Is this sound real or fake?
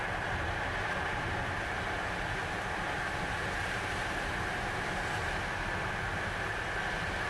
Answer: real